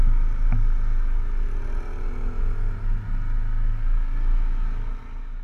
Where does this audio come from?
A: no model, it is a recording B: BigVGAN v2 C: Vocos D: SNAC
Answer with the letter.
A